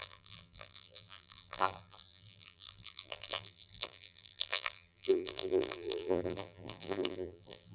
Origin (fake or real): fake